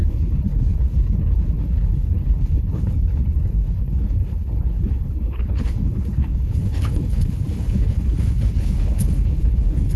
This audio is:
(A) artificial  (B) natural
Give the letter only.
A